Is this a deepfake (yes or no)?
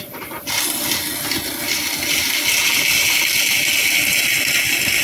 no